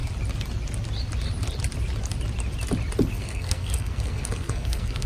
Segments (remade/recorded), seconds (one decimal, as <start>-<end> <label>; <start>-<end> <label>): 0.0-3.1 recorded; 3.1-5.1 remade